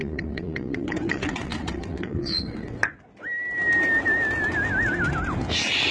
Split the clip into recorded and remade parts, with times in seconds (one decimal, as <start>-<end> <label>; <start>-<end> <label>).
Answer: 0.0-2.8 remade; 2.8-5.9 recorded